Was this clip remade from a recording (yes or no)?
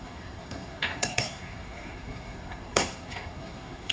yes